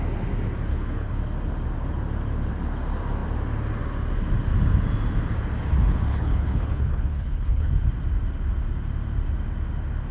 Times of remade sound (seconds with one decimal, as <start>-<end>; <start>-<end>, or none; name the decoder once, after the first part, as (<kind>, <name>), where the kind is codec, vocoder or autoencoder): 0.7-1.2 (codec, HILCodec); 6.1-7.7